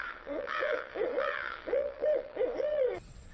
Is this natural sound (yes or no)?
no